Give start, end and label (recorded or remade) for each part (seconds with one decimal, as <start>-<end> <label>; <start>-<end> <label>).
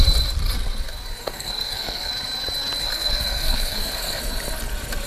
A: 0.0-1.2 recorded; 1.2-2.1 remade; 2.1-2.8 recorded; 2.8-4.2 remade; 4.2-5.1 recorded